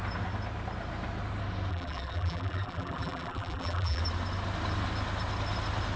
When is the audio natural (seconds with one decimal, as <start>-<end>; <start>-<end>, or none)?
0.0-1.7; 4.0-6.0